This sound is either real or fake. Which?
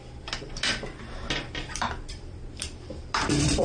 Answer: fake